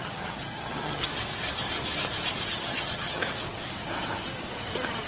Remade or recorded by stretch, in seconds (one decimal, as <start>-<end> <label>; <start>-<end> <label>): 0.0-1.1 remade; 1.1-2.5 recorded; 2.5-3.2 remade; 3.2-5.1 recorded